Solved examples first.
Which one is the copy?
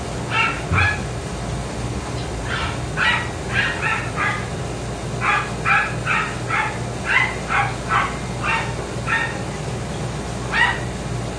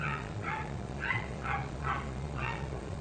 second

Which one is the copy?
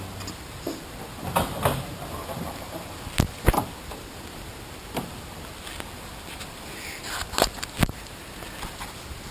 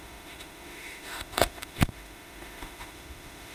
second